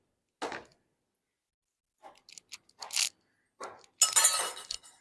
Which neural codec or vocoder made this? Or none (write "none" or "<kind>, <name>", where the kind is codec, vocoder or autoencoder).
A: none